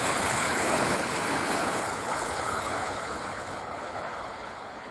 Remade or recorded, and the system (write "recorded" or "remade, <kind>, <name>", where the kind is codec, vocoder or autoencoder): remade, codec, HILCodec